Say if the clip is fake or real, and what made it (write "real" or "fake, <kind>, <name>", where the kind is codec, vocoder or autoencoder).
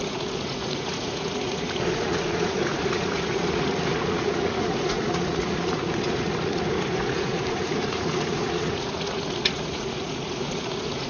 fake, vocoder, Vocos